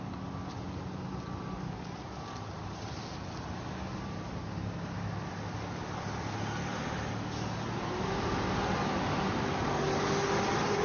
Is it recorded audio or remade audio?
recorded